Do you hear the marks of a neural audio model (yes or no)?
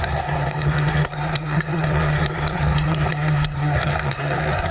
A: yes